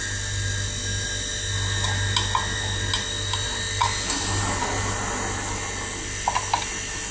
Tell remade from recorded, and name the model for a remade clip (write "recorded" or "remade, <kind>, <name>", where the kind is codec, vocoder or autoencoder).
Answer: recorded